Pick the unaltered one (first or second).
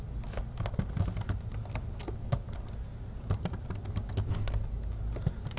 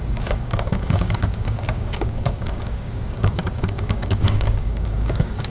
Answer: first